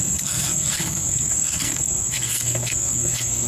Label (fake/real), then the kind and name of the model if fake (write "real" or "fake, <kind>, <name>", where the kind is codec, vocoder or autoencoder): fake, codec, SNAC